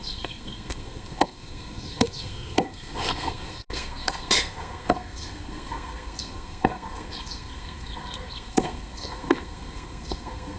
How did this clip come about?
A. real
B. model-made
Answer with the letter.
B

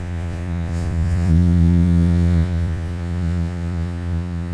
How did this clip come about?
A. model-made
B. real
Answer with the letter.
A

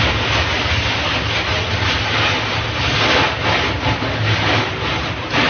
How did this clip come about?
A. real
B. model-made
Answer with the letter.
A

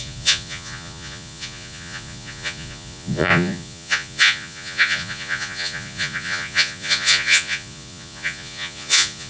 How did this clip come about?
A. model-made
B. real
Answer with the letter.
A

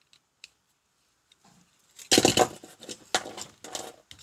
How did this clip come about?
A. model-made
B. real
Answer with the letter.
B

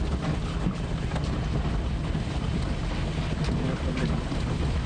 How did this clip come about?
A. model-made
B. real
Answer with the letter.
B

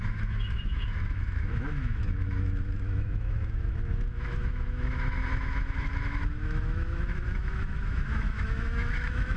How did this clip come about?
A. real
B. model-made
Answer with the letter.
B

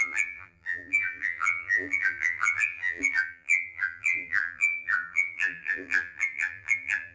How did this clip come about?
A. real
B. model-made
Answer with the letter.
B